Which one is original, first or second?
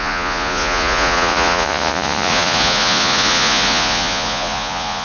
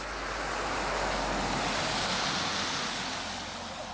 second